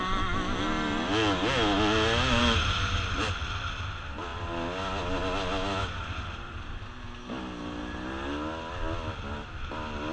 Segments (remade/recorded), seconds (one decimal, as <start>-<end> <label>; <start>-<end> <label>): 0.0-10.1 recorded